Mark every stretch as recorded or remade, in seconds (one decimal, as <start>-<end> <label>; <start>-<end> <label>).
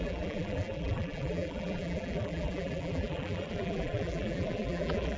0.0-5.2 remade